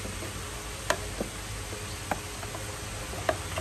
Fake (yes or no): no